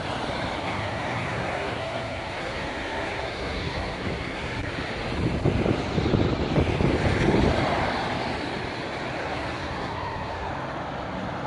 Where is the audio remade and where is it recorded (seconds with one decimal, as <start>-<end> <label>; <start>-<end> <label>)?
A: 0.0-0.6 recorded; 0.6-4.7 remade; 4.7-9.2 recorded; 9.2-10.5 remade; 10.5-11.5 recorded